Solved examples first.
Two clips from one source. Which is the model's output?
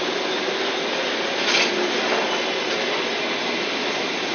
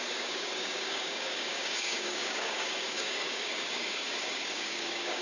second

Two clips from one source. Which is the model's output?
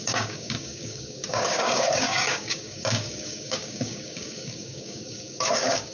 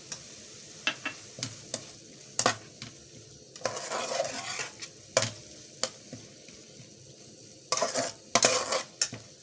first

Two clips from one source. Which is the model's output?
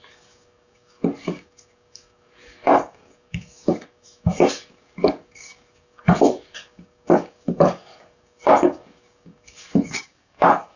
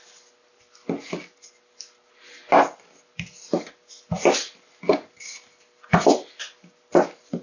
first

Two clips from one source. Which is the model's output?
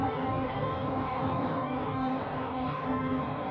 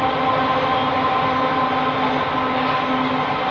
first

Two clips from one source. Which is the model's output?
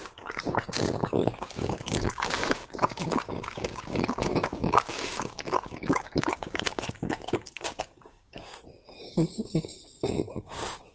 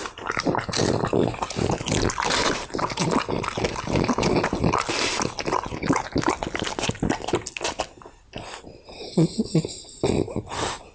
first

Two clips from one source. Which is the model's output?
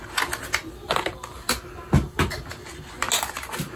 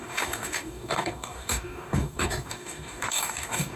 second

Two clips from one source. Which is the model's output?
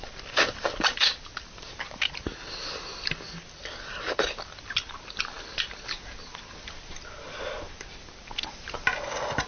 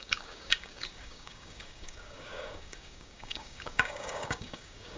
second